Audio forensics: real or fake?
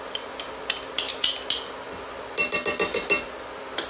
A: real